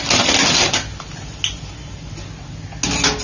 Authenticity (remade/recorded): recorded